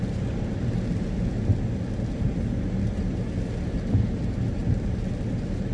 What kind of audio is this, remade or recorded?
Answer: recorded